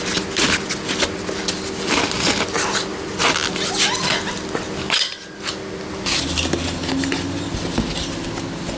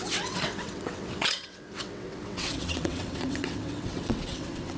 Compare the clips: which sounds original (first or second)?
first